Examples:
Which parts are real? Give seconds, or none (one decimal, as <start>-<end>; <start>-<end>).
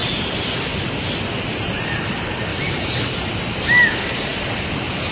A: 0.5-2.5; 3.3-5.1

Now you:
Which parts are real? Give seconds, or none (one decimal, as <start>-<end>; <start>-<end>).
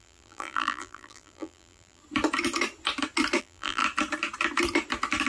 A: 2.0-3.4; 3.8-5.3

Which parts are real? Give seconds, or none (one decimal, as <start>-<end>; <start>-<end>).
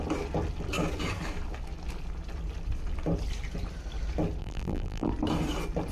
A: 0.0-4.4; 5.1-5.9